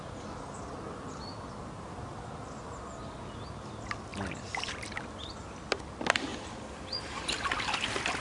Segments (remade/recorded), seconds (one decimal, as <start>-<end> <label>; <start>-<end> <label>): 0.0-4.1 recorded; 4.1-4.7 remade; 4.7-6.3 recorded; 6.3-8.2 remade

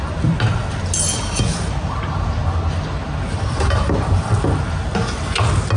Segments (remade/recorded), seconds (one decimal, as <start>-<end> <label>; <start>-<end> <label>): 0.0-5.8 recorded

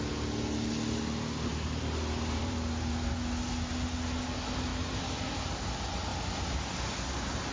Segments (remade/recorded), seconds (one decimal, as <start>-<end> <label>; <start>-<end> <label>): 0.0-1.5 recorded; 1.5-3.1 remade; 3.1-4.7 recorded; 4.7-5.4 remade; 5.4-6.1 recorded; 6.1-6.6 remade; 6.6-7.5 recorded

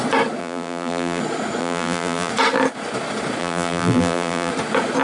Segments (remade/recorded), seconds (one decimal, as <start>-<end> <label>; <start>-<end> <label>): 0.0-0.4 recorded; 0.4-1.2 remade; 1.2-1.6 recorded; 1.6-2.3 remade; 2.3-3.4 recorded; 3.4-4.5 remade; 4.5-5.0 recorded

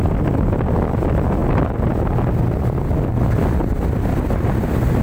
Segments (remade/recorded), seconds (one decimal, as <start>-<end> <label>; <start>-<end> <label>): 0.0-5.0 recorded